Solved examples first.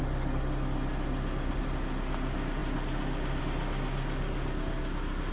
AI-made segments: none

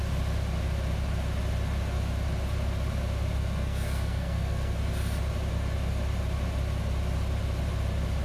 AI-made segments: 3.4-4.8 (codec, SNAC)

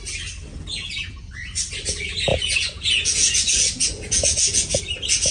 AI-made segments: 0.5-1.3 (vocoder, Vocos); 2.3-4.8